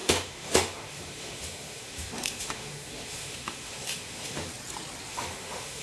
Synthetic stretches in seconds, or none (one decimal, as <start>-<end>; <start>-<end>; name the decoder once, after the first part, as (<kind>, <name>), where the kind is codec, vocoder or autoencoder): 0.0-4.5 (autoencoder, DAC-VAE); 5.1-5.8